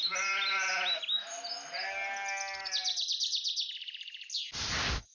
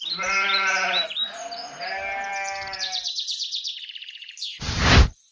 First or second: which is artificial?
second